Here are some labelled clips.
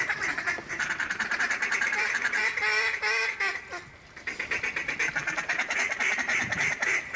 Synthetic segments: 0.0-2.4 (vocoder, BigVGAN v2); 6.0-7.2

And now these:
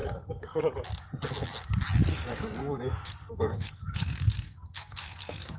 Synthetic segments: 0.0-0.6 (codec, SNAC); 2.1-5.6

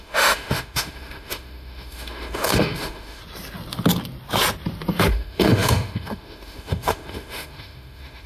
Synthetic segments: 0.0-3.2 (autoencoder, DAC-VAE); 5.1-8.3

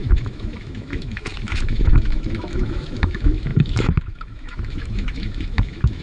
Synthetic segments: 0.0-6.0 (autoencoder, DAC-VAE)

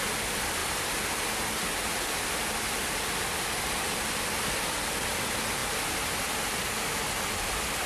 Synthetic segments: none

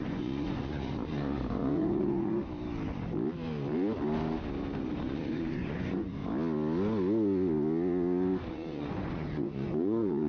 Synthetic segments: 0.0-2.4 (vocoder, Vocos); 5.0-6.2; 8.5-10.3